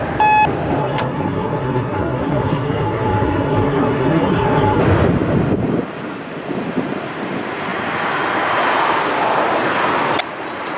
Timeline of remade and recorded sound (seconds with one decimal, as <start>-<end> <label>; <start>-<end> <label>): 0.0-0.8 recorded; 0.8-4.8 remade; 4.8-10.8 recorded